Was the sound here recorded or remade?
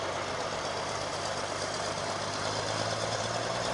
remade